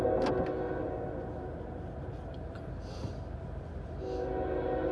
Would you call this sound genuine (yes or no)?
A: yes